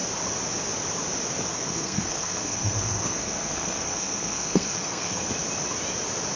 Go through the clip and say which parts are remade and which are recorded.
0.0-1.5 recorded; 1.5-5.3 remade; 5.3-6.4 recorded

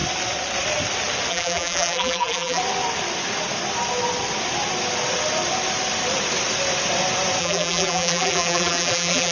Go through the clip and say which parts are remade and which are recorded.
0.0-1.3 recorded; 1.3-2.6 remade; 2.6-7.4 recorded; 7.4-9.3 remade

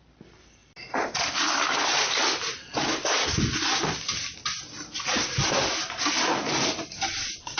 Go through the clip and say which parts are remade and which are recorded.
0.0-7.6 recorded

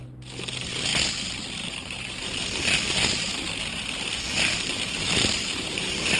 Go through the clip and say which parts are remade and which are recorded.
0.0-4.3 recorded; 4.3-6.2 remade

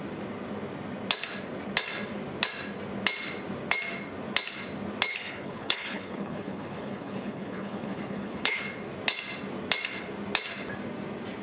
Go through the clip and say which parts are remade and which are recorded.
0.0-5.1 recorded; 5.1-8.6 remade; 8.6-11.4 recorded